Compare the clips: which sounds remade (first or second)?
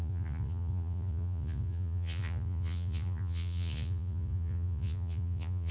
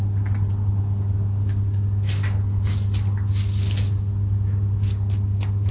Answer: first